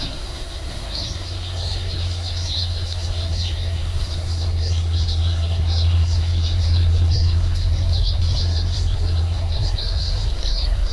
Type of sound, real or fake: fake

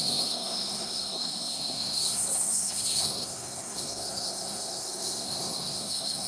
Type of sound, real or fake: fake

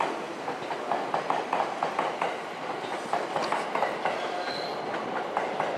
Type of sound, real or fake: real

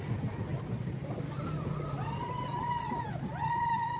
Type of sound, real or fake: real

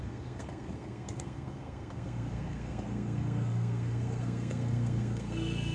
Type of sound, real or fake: fake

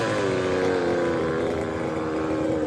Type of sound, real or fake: real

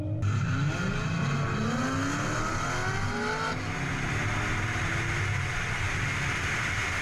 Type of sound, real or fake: real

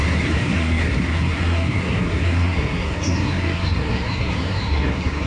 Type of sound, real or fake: fake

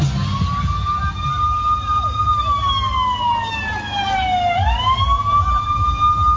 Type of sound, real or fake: real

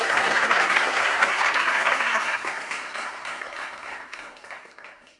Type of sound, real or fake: fake